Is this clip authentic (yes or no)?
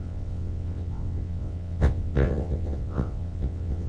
no